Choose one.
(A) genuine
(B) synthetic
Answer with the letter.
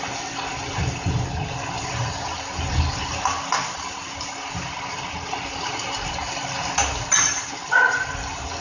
A